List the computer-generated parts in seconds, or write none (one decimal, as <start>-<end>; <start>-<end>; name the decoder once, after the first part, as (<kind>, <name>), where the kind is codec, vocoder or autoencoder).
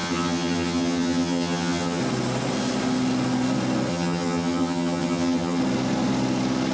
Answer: 0.0-2.0 (vocoder, HiFi-GAN); 3.9-5.6